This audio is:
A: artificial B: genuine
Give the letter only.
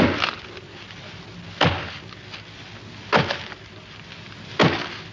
B